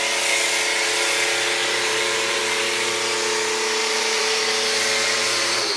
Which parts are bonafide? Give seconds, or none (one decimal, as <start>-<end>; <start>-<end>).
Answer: 0.0-1.6; 2.4-3.8; 4.4-5.0